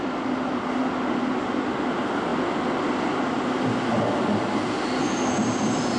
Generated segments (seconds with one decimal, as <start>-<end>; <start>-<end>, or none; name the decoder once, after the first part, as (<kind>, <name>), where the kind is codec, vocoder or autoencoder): none